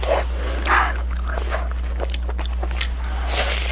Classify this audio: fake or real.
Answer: real